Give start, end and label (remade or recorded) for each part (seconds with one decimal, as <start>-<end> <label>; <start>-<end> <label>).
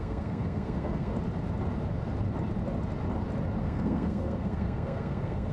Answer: 0.0-1.1 remade; 1.1-3.6 recorded; 3.6-5.5 remade